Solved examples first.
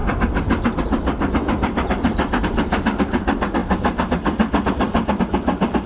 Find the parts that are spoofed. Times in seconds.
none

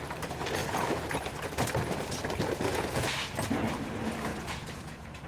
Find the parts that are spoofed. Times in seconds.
0.6-1.3 (vocoder, Vocos); 2.7-3.3; 4.3-5.3